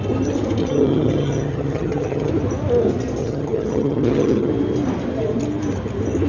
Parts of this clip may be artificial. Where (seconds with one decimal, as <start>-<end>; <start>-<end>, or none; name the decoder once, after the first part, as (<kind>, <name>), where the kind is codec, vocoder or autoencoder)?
0.6-2.3 (vocoder, HiFi-GAN); 3.2-4.5